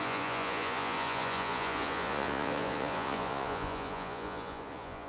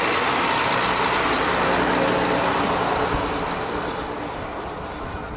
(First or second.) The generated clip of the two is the first